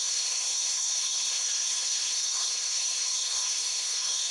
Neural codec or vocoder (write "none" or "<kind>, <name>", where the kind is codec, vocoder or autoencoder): codec, SNAC